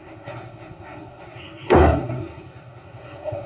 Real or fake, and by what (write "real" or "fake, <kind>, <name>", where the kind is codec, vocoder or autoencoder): fake, codec, SNAC